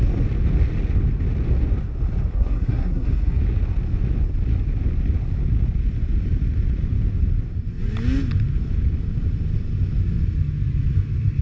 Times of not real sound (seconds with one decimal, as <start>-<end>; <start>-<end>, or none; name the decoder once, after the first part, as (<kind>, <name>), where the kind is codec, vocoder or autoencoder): 2.3-3.4 (codec, SNAC)